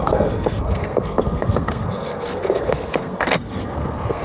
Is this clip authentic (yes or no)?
no